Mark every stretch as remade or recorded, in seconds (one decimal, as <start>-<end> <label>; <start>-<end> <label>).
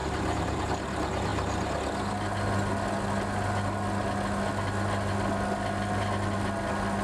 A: 0.0-0.6 remade; 0.6-7.0 recorded